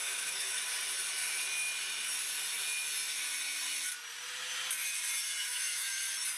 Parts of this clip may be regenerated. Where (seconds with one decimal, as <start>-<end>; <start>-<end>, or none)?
0.0-0.6; 5.4-6.0